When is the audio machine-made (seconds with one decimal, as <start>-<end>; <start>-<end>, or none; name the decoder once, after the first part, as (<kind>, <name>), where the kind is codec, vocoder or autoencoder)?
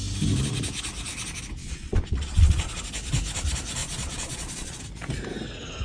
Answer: 1.6-2.8 (vocoder, Vocos); 3.8-4.8